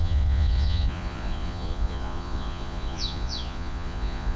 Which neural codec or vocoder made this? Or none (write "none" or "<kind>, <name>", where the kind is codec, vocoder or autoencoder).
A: vocoder, Vocos